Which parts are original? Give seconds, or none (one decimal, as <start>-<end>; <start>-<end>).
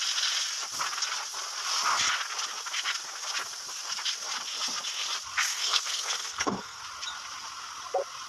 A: 0.0-5.5; 6.8-8.3